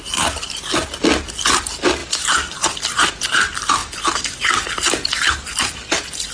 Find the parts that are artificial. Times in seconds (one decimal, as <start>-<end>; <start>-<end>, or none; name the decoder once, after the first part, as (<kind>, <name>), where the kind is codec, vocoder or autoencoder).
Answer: 0.0-3.8 (vocoder, BigVGAN v2); 5.2-6.3